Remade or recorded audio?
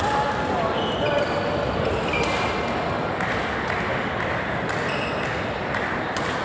recorded